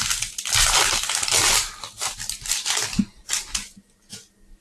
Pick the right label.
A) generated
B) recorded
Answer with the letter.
B